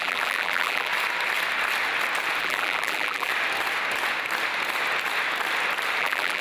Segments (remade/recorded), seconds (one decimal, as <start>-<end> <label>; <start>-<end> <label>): 0.0-0.9 remade; 0.9-2.4 recorded; 2.4-3.3 remade; 3.3-6.0 recorded; 6.0-6.4 remade